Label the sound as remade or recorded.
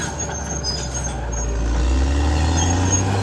recorded